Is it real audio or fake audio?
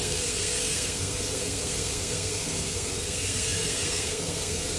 fake